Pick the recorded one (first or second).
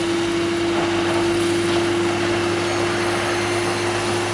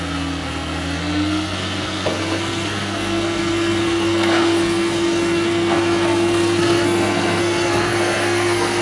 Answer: first